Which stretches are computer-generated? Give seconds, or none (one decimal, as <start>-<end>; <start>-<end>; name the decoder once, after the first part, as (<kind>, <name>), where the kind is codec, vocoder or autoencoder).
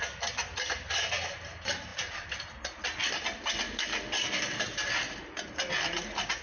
none